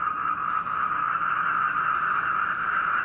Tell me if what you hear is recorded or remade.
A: recorded